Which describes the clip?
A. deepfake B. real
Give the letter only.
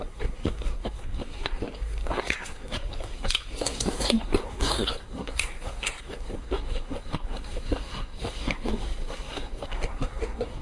A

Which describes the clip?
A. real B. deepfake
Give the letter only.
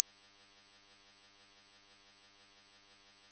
B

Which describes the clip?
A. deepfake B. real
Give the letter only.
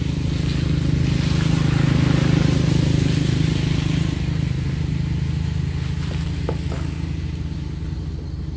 B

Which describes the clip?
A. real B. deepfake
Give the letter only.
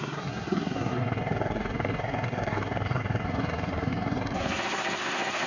B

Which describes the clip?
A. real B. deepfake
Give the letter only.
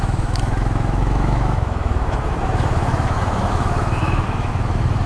B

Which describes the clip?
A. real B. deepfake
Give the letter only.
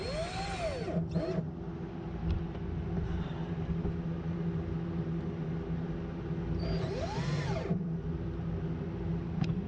A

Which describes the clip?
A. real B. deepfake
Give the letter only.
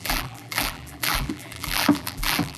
B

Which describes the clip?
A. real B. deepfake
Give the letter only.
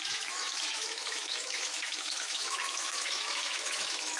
B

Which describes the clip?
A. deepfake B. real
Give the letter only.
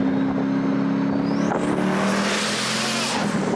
B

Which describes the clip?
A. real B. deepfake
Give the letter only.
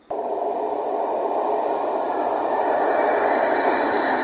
A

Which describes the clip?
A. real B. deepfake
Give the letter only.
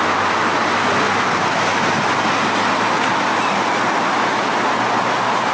A